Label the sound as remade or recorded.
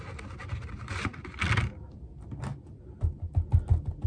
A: recorded